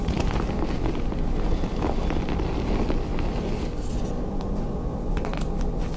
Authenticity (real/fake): real